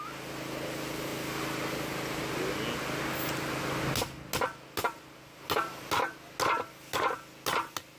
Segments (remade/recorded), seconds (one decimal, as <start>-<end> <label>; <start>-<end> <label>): 0.0-8.0 recorded